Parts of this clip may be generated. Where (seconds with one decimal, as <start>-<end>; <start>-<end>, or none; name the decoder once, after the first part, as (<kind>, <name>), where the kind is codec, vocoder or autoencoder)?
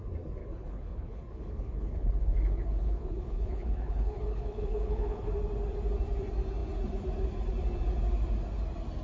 0.4-5.3 (codec, HILCodec)